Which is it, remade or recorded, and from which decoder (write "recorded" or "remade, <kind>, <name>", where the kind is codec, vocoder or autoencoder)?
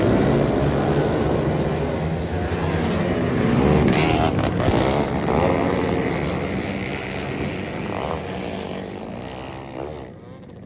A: recorded